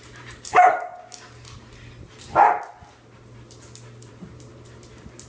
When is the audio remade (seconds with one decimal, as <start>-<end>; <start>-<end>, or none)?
0.0-0.9; 4.1-5.3